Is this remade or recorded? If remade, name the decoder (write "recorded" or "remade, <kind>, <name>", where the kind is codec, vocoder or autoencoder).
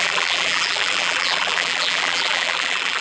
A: remade, vocoder, BigVGAN v2